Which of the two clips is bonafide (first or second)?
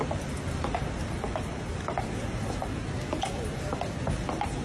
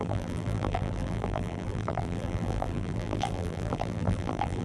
first